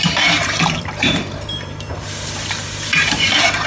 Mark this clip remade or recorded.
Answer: remade